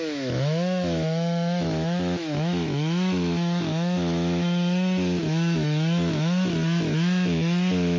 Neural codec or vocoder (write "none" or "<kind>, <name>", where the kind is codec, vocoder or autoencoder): autoencoder, DAC-VAE